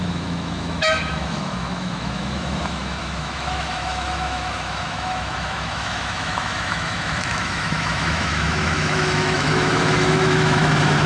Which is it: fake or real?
fake